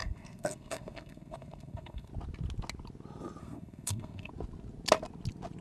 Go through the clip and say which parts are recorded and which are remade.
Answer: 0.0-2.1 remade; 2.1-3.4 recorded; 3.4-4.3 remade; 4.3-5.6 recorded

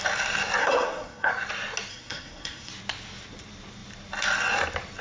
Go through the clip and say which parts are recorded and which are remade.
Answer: 0.0-0.6 recorded; 0.6-1.3 remade; 1.3-1.9 recorded; 1.9-2.7 remade; 2.7-5.0 recorded

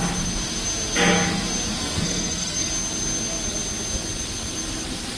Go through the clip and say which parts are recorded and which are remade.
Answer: 0.0-1.8 recorded; 1.8-2.7 remade; 2.7-5.2 recorded

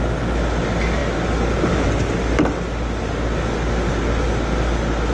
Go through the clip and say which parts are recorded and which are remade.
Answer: 0.0-5.1 recorded